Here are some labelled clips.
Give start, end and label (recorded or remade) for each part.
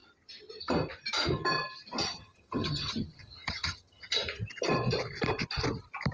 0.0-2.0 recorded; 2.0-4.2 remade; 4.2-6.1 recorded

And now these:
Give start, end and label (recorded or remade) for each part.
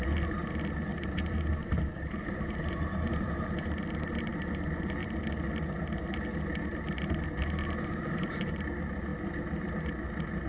0.0-0.9 recorded; 0.9-4.3 remade; 4.3-10.5 recorded